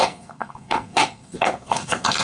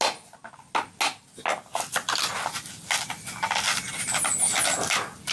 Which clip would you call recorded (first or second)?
second